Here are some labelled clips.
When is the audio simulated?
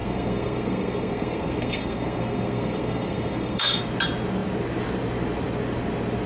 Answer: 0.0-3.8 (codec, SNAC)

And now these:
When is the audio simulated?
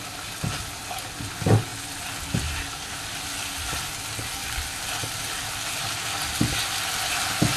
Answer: none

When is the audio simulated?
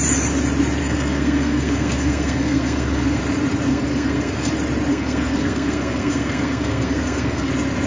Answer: 0.8-3.2 (codec, SNAC); 3.7-4.5; 4.9-7.5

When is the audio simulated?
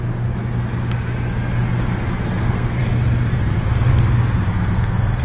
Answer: 2.2-2.8 (codec, SNAC); 3.3-3.9; 4.5-5.2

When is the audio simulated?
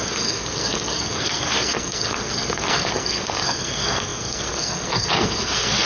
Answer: 0.0-5.9 (codec, SNAC)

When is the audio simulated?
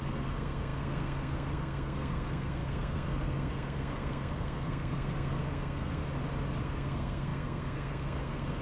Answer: 0.0-6.0 (codec, SNAC); 6.6-8.6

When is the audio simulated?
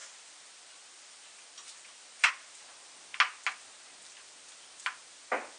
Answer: none